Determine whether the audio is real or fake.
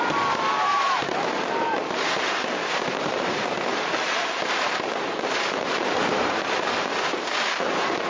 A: fake